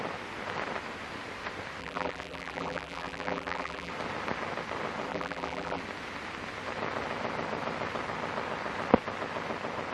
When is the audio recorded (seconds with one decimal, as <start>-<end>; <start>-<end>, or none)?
0.0-1.8; 3.9-5.1; 5.8-9.9